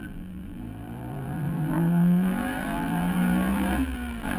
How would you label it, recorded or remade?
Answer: remade